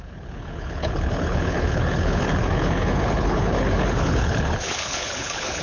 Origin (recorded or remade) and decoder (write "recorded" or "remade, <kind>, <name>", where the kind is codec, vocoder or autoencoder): remade, codec, HILCodec